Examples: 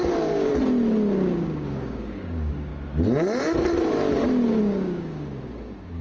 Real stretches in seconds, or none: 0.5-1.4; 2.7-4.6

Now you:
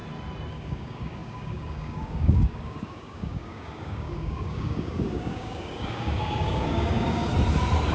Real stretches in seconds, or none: 0.0-0.5; 7.3-7.9

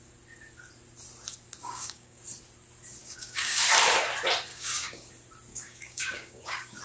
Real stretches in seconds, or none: 0.0-1.6; 2.2-3.0; 3.6-4.5; 5.1-5.5

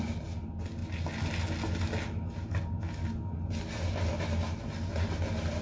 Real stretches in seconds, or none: 0.0-5.6